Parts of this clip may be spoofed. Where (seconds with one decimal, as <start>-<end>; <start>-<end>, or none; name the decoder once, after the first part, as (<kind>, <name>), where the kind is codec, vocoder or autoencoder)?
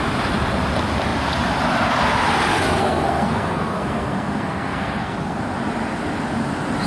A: 2.8-5.4 (codec, SNAC)